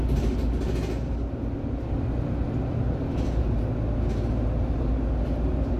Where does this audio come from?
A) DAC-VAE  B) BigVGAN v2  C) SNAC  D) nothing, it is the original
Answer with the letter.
D